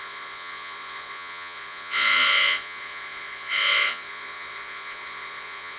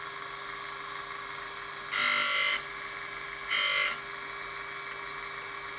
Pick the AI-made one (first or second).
first